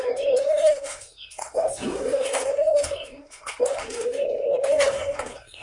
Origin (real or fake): fake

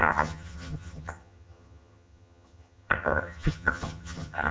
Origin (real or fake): fake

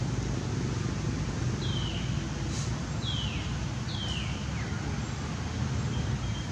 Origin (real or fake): real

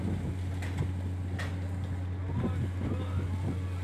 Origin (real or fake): real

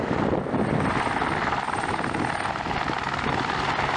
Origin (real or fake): real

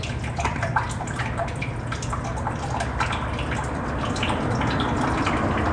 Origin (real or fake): real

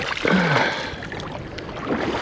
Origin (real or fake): real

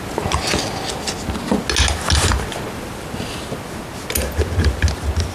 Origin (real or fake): real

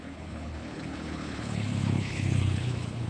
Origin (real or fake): fake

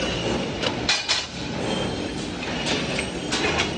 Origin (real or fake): real